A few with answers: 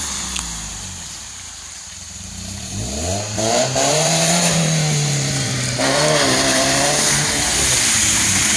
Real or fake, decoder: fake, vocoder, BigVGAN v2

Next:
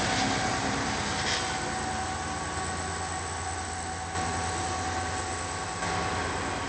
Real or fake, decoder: real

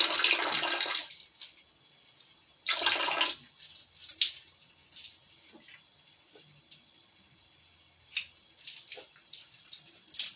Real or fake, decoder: real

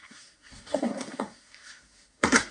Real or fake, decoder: fake, codec, SNAC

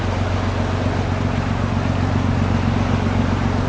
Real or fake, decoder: real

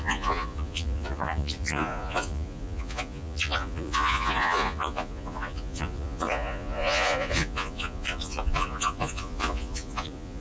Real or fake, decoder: fake, vocoder, Vocos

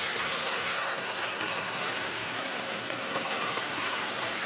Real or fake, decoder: fake, codec, SNAC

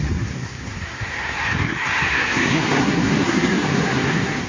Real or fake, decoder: fake, codec, SNAC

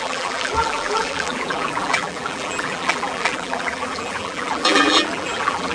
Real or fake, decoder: fake, vocoder, BigVGAN v2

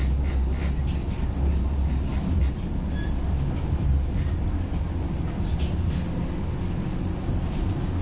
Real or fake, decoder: real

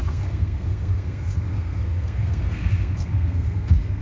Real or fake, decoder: fake, codec, SNAC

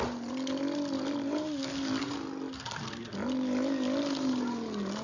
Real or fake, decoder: real